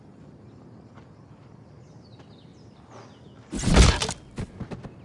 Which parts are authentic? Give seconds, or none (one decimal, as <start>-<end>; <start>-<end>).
0.0-5.0